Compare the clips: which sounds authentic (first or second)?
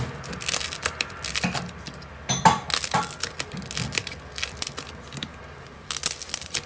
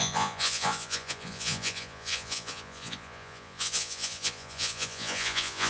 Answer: first